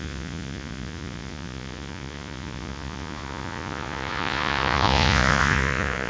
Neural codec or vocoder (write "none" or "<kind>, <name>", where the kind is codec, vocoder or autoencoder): vocoder, Vocos